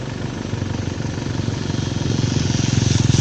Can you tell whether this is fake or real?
real